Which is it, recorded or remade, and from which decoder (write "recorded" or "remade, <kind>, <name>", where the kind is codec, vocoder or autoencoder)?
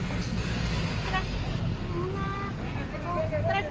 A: recorded